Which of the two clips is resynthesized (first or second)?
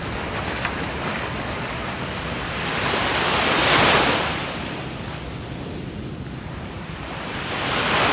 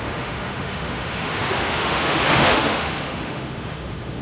second